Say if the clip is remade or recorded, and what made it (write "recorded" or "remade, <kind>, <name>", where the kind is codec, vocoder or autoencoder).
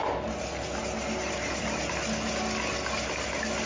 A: recorded